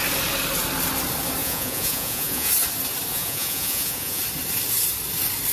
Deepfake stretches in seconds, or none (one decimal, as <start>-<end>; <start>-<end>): 1.4-2.5; 3.1-4.2